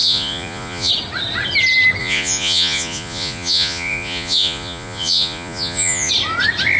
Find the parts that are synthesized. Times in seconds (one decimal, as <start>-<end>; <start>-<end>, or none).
0.0-0.9; 2.0-6.1